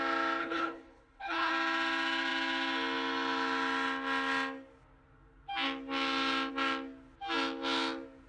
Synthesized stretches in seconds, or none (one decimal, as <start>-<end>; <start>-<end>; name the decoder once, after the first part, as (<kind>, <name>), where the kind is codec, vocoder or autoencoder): 0.4-1.5 (codec, HILCodec)

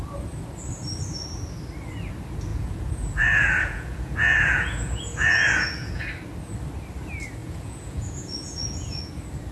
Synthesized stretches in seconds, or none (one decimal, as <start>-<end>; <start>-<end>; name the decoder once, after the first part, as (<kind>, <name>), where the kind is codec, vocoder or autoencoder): 2.5-6.0 (vocoder, Vocos); 7.4-9.1

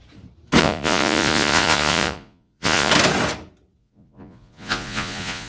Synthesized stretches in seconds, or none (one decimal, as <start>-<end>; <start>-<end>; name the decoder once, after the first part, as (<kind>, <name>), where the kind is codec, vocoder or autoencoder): 0.6-2.9 (vocoder, Vocos); 3.8-5.5

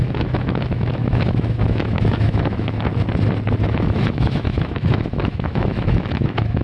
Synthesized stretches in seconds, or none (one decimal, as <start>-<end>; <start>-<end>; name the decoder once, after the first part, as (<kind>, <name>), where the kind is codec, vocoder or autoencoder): 0.0-2.9 (autoencoder, DAC-VAE); 3.7-6.6

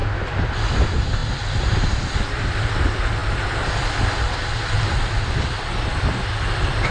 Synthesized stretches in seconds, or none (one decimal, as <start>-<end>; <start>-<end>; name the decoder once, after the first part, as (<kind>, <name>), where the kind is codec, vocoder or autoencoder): 0.5-3.2 (vocoder, BigVGAN v2); 4.0-6.9